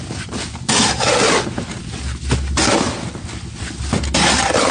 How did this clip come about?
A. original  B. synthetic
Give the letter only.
A